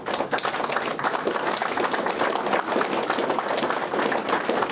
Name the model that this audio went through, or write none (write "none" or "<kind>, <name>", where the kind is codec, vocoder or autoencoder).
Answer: none